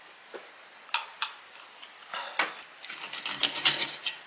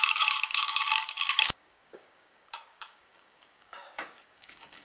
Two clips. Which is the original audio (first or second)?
first